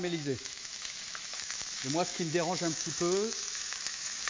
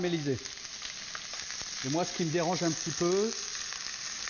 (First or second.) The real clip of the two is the second